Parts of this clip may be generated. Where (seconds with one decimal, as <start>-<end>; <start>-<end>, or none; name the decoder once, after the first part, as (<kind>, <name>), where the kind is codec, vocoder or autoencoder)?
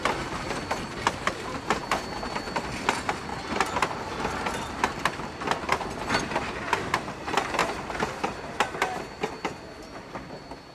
none